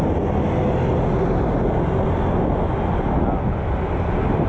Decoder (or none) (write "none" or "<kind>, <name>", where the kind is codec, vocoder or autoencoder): none